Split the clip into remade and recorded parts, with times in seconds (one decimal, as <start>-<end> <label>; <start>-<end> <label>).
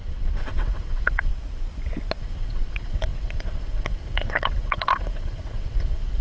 0.0-1.3 remade; 1.3-2.2 recorded; 2.2-6.2 remade